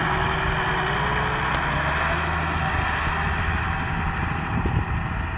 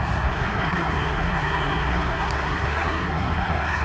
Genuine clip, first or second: first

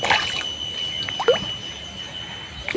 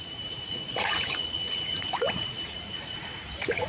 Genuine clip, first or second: first